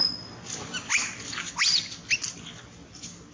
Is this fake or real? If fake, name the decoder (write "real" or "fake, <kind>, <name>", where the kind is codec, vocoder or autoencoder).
real